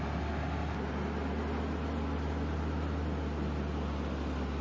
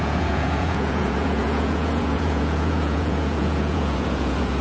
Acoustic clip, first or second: first